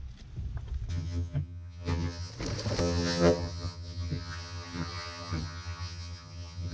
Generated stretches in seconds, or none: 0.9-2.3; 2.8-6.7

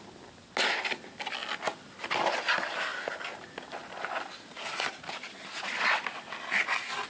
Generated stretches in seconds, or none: none